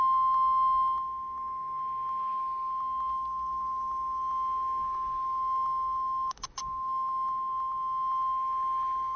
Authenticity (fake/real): real